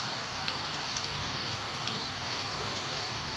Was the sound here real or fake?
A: fake